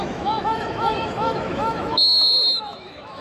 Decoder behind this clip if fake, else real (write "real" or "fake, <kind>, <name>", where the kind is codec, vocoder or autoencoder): fake, autoencoder, DAC-VAE